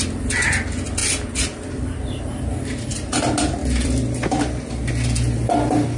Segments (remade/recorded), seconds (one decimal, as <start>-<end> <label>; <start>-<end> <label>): 0.0-1.0 recorded; 1.0-2.2 remade; 2.2-3.6 recorded; 3.6-4.9 remade; 4.9-6.0 recorded